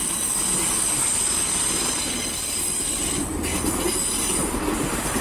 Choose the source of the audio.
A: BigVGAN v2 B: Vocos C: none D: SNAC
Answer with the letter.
C